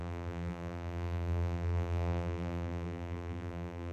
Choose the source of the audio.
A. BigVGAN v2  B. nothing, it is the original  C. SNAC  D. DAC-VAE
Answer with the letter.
A